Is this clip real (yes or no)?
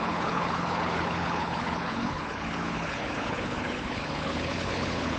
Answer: no